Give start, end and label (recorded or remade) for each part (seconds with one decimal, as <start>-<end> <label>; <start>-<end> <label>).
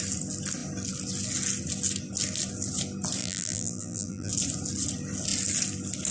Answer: 0.0-3.2 recorded; 3.2-4.3 remade; 4.3-6.1 recorded